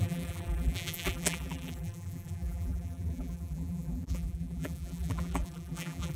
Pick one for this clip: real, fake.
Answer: fake